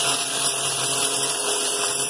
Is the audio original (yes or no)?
yes